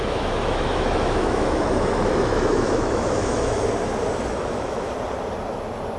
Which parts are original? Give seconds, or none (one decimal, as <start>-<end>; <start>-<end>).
3.6-4.3; 4.9-6.0